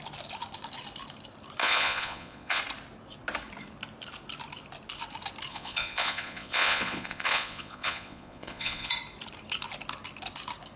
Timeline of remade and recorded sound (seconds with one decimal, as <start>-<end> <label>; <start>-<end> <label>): 0.0-1.6 recorded; 1.6-2.6 remade; 2.6-5.5 recorded; 5.5-8.9 remade; 8.9-10.8 recorded